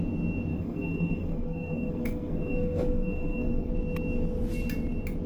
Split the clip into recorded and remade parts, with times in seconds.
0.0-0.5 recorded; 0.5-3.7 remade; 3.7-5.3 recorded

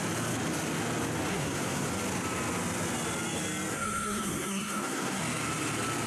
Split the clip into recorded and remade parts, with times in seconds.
0.0-1.3 recorded; 1.3-1.9 remade; 1.9-3.7 recorded; 3.7-5.2 remade; 5.2-6.1 recorded

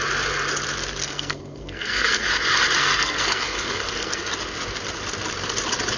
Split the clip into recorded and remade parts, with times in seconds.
0.0-1.0 recorded; 1.0-2.3 remade; 2.3-2.8 recorded; 2.8-4.3 remade; 4.3-6.0 recorded

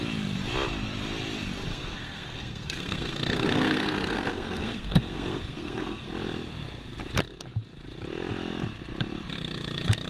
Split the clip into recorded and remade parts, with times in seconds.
0.0-1.7 recorded; 1.7-6.1 remade; 6.1-10.1 recorded

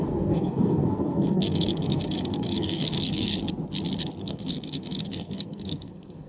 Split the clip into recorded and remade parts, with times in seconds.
0.0-3.3 remade; 3.3-4.2 recorded; 4.2-6.3 remade

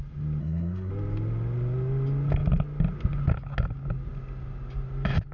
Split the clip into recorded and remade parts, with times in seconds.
0.0-0.4 recorded; 0.4-0.9 remade; 0.9-5.3 recorded

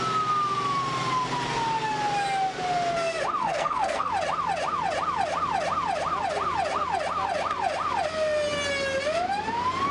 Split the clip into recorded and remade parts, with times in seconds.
0.0-3.4 recorded; 3.4-4.1 remade; 4.1-9.9 recorded